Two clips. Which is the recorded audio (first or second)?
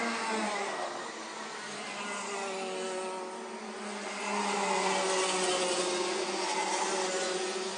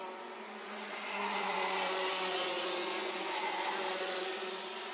first